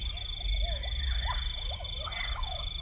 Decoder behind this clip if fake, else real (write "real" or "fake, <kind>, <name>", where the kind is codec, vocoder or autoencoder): real